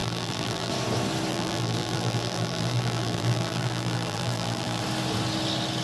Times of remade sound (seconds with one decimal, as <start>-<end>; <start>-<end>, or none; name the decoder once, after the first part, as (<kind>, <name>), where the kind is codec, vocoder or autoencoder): 0.0-0.7 (vocoder, BigVGAN v2); 1.3-4.8